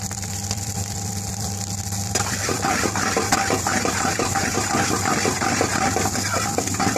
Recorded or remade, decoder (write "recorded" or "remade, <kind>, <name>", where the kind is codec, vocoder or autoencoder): remade, vocoder, BigVGAN v2